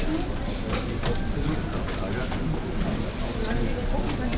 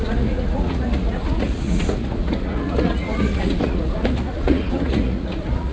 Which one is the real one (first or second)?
first